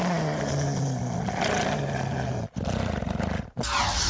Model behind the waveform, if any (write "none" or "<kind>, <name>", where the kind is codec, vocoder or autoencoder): none